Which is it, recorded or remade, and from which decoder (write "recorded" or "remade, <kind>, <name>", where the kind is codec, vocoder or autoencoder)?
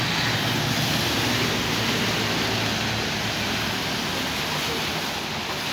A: recorded